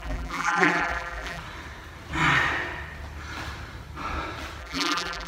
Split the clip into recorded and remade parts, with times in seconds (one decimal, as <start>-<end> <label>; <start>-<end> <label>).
0.0-1.4 remade; 1.4-4.6 recorded; 4.6-5.3 remade